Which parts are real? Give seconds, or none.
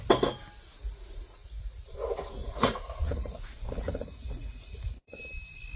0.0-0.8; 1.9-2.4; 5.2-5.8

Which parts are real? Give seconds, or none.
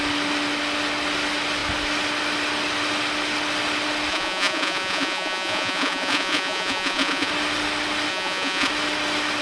0.0-4.1; 7.3-8.1; 8.7-9.4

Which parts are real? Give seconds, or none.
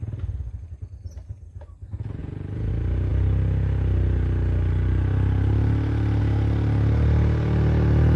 0.0-2.2; 2.7-8.2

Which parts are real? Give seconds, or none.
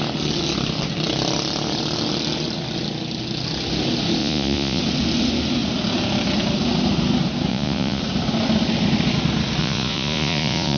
0.0-4.2; 4.8-7.5; 8.0-9.6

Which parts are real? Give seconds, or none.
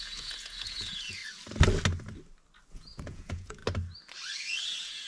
1.2-2.7; 3.6-4.6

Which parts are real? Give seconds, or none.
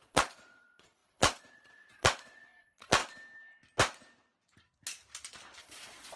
3.0-5.6